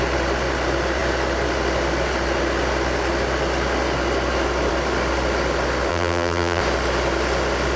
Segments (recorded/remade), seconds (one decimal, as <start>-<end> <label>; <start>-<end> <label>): 0.0-5.9 recorded; 5.9-6.6 remade; 6.6-7.8 recorded